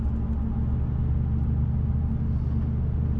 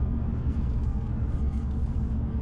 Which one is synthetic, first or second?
second